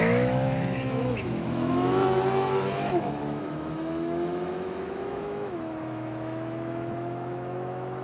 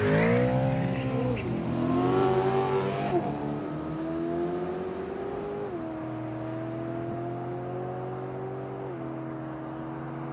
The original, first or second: second